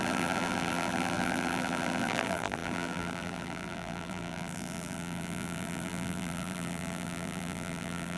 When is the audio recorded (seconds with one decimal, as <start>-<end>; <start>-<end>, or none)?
none